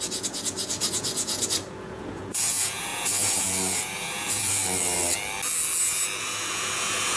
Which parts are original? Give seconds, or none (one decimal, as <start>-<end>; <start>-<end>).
4.6-6.2